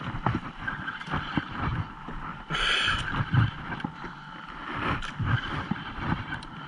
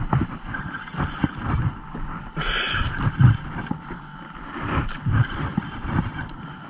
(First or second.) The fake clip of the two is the first